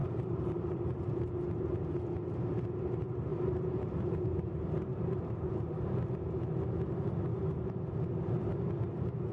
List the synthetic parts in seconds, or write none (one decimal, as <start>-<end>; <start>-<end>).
0.0-1.3; 3.3-6.0; 7.3-8.5